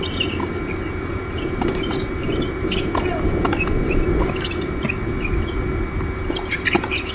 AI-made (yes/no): no